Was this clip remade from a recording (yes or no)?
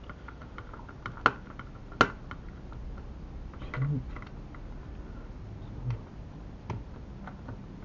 no